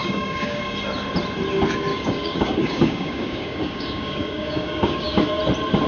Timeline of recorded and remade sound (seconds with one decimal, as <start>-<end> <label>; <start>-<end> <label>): 0.0-0.6 remade; 0.6-1.9 recorded; 1.9-5.4 remade; 5.4-5.9 recorded